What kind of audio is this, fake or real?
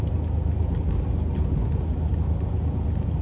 real